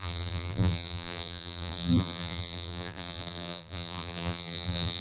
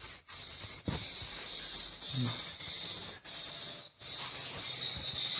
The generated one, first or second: first